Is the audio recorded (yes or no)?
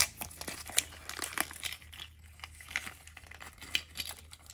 yes